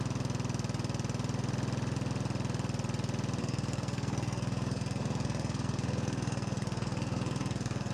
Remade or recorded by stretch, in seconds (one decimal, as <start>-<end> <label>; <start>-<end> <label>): 0.0-3.4 recorded; 3.4-7.9 remade